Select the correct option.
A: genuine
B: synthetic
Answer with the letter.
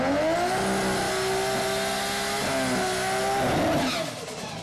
A